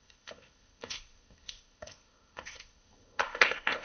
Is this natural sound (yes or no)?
no